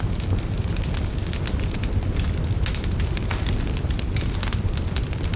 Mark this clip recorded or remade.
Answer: recorded